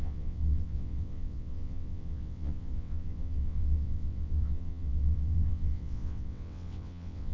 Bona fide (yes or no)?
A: no